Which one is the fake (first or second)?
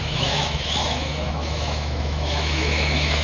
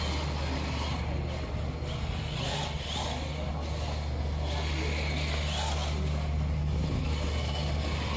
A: first